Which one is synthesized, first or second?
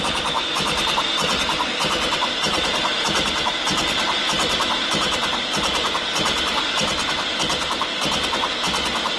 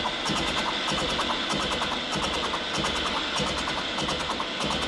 first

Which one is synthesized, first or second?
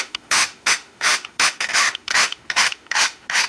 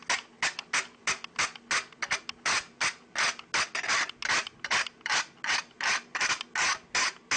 first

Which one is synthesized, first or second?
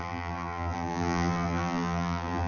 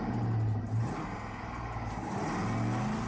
first